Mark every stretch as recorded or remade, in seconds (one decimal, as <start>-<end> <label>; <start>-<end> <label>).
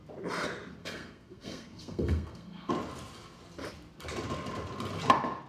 0.0-0.8 recorded; 0.8-2.7 remade; 2.7-5.5 recorded